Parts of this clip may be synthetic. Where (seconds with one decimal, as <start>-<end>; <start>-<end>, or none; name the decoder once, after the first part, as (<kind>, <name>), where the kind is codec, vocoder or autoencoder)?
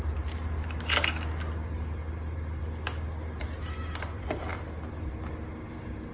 none